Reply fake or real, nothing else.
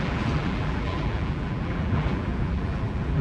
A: fake